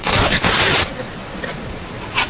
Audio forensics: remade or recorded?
remade